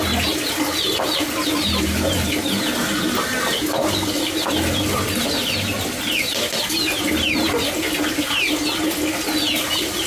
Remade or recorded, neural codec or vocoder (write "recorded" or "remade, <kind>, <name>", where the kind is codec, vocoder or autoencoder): recorded